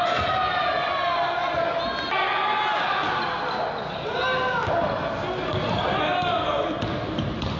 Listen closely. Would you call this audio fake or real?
real